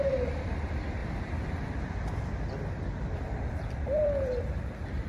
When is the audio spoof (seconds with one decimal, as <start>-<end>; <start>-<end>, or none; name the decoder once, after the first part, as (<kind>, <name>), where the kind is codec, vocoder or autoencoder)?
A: 0.0-1.0 (vocoder, BigVGAN v2); 3.3-5.1